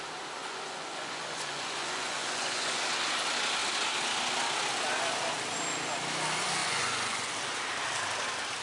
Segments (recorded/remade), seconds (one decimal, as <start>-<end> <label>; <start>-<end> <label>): 0.0-0.4 recorded; 0.4-2.8 remade; 2.8-6.6 recorded; 6.6-7.3 remade; 7.3-8.6 recorded